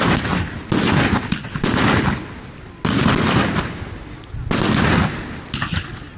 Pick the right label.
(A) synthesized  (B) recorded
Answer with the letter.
B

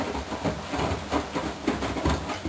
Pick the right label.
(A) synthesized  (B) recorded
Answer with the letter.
B